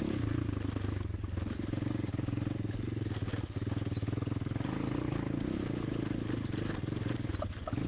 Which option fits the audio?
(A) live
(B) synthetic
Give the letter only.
A